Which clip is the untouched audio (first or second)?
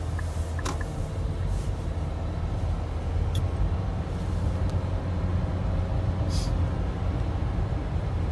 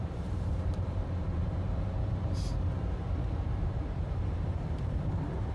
first